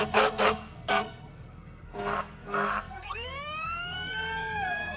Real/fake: fake